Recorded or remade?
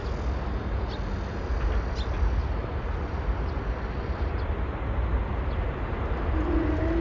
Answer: recorded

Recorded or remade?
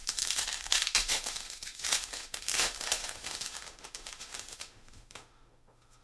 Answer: remade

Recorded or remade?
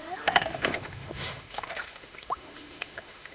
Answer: remade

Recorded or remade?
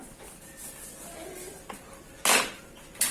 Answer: recorded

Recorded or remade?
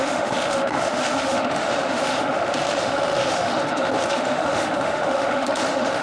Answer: remade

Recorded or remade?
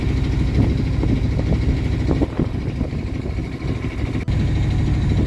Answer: recorded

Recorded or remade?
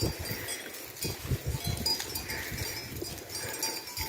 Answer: recorded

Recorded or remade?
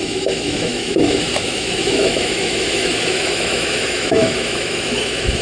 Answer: remade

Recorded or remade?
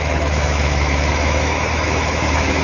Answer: remade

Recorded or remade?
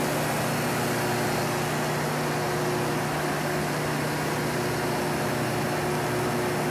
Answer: recorded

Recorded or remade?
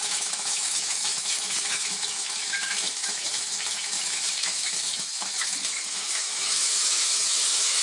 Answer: remade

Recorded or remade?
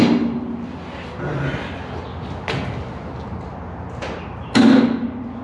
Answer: recorded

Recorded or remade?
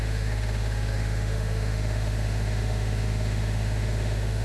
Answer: remade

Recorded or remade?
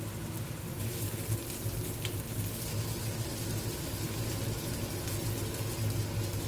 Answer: recorded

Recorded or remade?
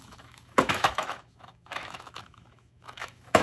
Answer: remade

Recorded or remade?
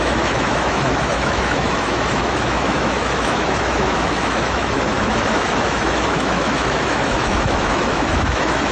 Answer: remade